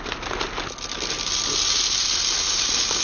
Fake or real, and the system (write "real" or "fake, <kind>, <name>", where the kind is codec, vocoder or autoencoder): real